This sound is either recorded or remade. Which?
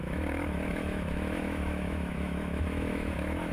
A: remade